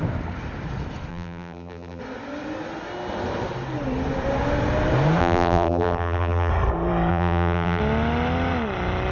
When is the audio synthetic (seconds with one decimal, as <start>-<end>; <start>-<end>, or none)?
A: 1.1-2.0; 5.2-6.5; 7.1-7.8